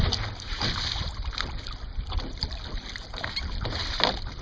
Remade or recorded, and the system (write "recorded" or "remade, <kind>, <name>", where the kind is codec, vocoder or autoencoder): recorded